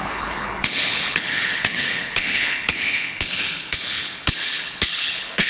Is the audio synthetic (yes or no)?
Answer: yes